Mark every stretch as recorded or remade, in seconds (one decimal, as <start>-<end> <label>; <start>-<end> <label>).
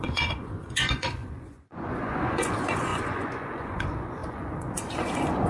0.0-5.5 remade